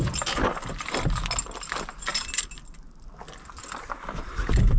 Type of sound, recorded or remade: recorded